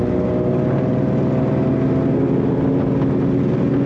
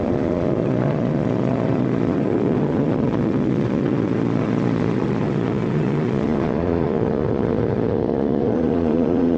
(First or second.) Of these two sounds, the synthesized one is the second